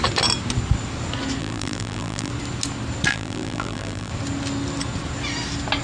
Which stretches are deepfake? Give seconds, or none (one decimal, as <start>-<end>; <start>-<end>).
1.4-2.3; 3.1-4.1